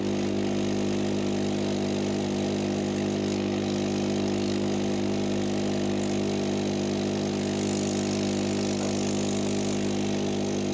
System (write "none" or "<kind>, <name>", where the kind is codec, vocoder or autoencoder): none